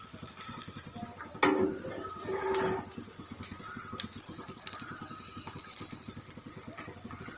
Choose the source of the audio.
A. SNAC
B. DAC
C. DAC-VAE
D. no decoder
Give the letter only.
D